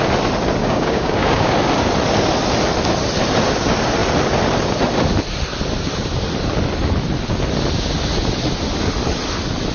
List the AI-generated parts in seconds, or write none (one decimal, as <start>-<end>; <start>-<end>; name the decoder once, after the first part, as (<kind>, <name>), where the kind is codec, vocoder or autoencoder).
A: 0.6-1.5 (codec, DAC)